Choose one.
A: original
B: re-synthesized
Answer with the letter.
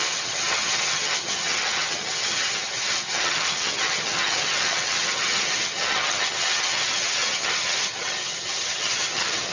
B